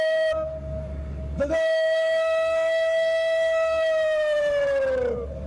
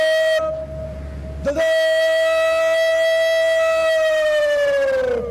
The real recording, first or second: second